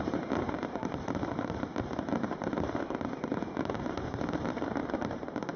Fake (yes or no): yes